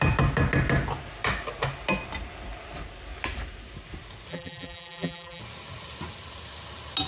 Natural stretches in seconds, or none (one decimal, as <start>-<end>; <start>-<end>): 0.0-4.3; 5.4-7.1